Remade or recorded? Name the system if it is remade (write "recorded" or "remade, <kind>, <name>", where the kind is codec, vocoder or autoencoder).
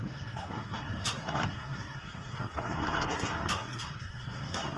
remade, codec, SNAC